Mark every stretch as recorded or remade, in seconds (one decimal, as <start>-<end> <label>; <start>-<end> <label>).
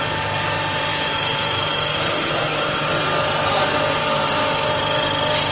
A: 0.0-0.9 recorded; 0.9-2.9 remade; 2.9-4.0 recorded; 4.0-4.8 remade; 4.8-5.5 recorded